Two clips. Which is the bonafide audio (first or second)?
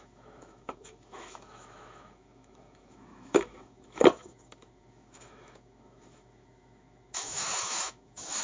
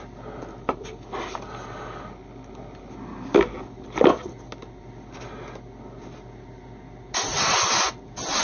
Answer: second